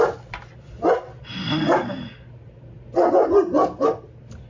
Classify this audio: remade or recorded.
recorded